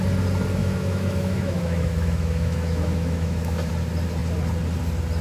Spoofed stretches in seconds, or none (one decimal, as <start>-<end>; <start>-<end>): 0.6-3.7